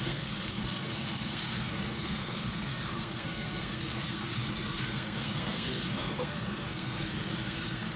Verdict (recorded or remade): remade